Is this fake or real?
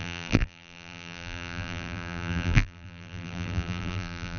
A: fake